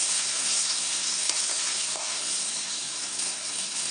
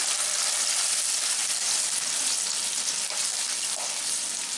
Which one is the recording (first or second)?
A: second